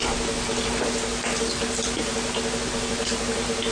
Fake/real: real